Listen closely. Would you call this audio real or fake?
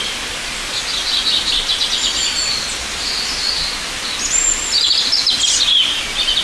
real